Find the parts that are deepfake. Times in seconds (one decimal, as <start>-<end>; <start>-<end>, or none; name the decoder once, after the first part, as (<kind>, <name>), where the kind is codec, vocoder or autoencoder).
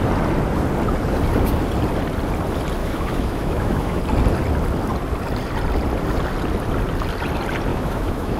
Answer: 2.8-4.0 (autoencoder, DAC-VAE); 7.7-8.4